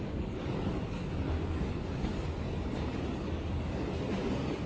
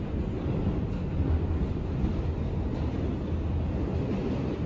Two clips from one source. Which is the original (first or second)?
second